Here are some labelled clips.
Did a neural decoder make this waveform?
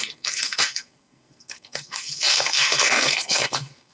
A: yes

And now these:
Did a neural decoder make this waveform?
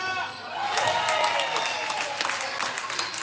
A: no